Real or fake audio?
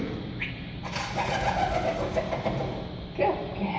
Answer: real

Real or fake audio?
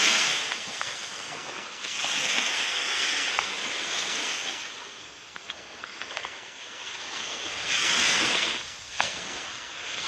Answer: fake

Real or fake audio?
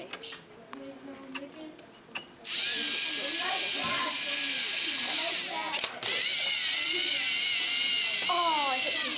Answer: real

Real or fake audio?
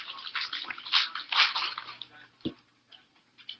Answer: real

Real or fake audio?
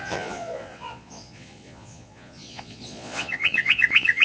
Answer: fake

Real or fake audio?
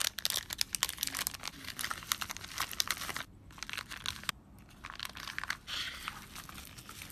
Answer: real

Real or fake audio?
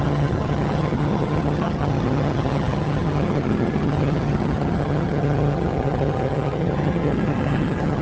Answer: fake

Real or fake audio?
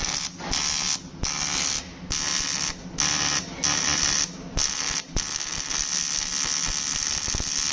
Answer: real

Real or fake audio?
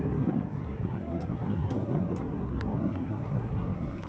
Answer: fake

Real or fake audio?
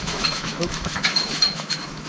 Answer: fake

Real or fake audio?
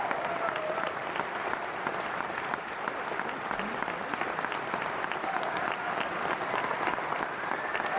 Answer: fake